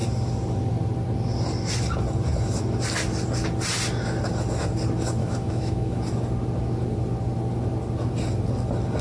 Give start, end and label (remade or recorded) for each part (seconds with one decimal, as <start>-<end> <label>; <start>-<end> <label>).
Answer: 0.0-5.2 recorded; 5.2-6.0 remade; 6.0-9.0 recorded